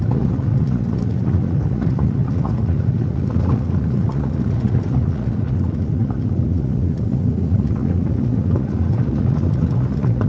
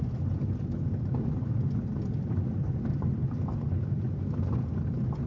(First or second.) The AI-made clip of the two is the first